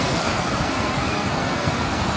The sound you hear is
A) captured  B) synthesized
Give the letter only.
B